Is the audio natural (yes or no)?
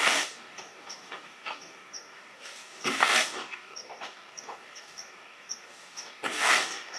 no